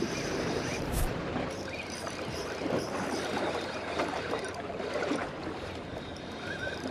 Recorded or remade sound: remade